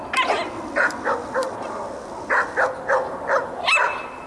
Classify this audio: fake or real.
real